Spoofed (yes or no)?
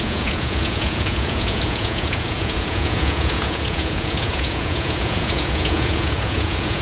yes